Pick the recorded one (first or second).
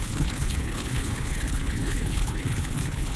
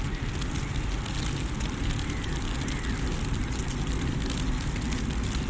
second